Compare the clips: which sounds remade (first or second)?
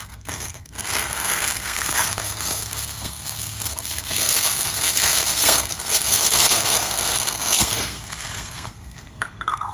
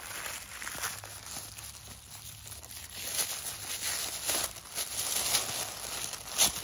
first